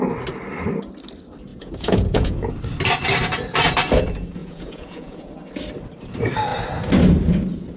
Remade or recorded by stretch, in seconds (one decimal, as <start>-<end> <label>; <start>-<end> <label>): 0.0-1.5 recorded; 1.5-2.5 remade; 2.5-4.4 recorded; 4.4-5.3 remade; 5.3-7.8 recorded